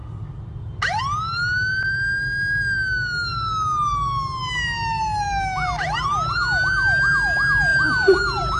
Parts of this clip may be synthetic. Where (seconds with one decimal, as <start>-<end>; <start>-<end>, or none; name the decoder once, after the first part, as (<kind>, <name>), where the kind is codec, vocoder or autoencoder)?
0.0-1.0 (vocoder, BigVGAN v2); 7.7-8.6